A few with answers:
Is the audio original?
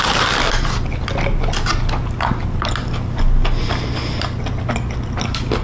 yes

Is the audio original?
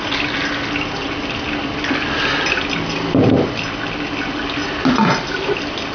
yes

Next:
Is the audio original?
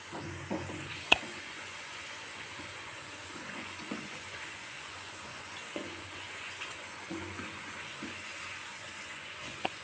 no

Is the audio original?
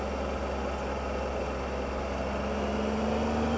yes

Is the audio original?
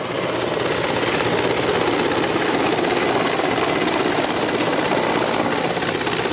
yes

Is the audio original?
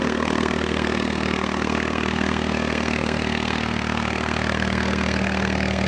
no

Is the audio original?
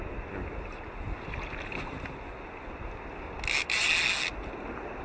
yes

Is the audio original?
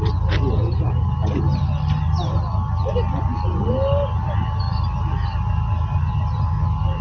yes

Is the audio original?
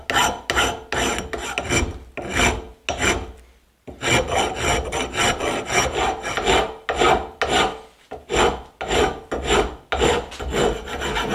yes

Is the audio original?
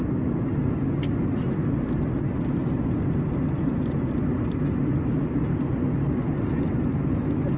yes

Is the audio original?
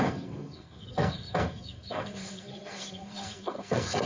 no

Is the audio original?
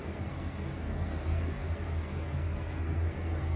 no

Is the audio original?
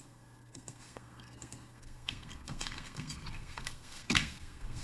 no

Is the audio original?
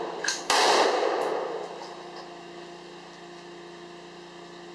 yes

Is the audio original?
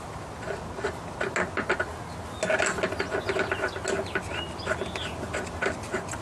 yes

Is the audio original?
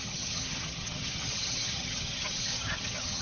no